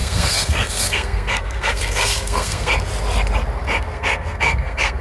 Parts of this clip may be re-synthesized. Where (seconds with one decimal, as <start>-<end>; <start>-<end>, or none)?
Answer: 0.0-2.7; 3.8-5.0